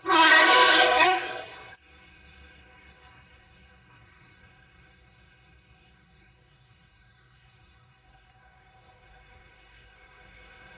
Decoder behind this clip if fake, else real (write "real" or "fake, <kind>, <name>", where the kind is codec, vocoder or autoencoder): fake, codec, SNAC